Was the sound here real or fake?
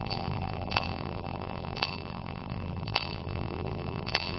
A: fake